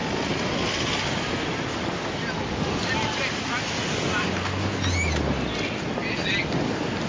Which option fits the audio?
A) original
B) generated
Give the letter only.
A